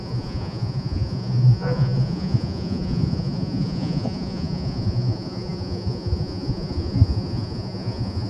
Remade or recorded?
remade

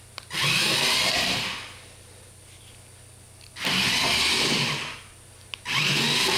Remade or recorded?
recorded